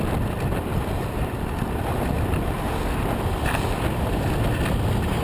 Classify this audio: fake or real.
real